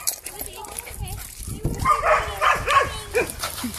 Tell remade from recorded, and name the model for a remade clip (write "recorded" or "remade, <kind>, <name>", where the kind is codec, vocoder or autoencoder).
recorded